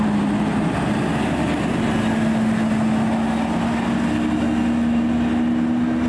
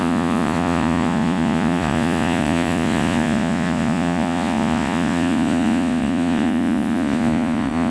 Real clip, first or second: first